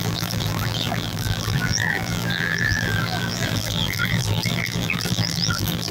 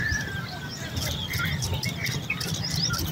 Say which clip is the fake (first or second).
first